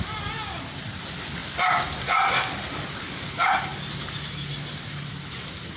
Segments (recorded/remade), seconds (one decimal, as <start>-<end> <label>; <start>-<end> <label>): 0.0-1.4 recorded; 1.4-4.9 remade; 4.9-5.8 recorded